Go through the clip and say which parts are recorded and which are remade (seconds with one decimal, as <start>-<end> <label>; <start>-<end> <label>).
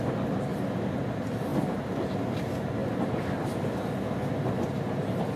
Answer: 0.0-5.4 recorded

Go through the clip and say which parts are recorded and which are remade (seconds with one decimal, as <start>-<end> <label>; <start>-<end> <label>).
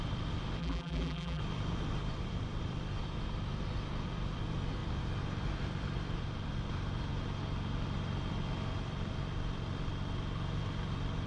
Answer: 0.0-0.6 recorded; 0.6-1.4 remade; 1.4-11.3 recorded